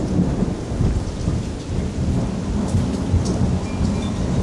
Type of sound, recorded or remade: recorded